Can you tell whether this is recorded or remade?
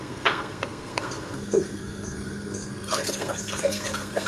remade